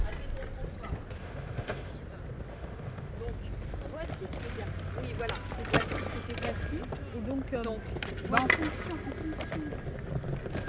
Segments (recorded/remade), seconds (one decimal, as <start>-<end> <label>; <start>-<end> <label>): 0.0-1.2 recorded; 1.2-1.9 remade; 1.9-2.5 recorded; 2.5-3.1 remade; 3.1-10.7 recorded